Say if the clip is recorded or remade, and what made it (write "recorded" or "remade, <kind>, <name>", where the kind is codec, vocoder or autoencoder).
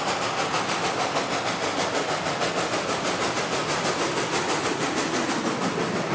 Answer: recorded